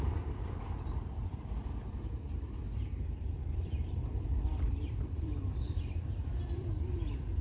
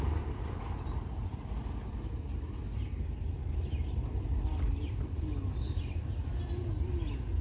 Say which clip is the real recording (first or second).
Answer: second